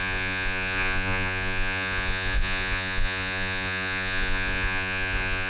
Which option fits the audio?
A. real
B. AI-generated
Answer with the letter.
B